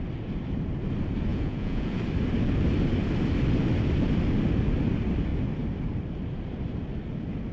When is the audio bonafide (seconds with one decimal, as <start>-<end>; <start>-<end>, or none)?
0.0-1.3; 2.0-7.5